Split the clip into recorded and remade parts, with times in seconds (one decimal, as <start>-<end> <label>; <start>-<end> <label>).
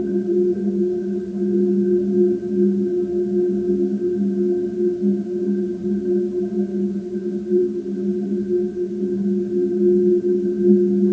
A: 0.0-11.1 recorded